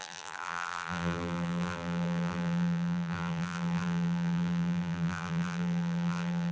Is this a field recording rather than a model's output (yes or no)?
no